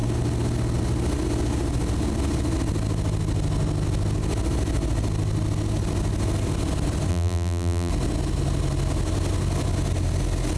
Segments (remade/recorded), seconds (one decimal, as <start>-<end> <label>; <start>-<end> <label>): 0.0-7.1 recorded; 7.1-7.9 remade; 7.9-10.6 recorded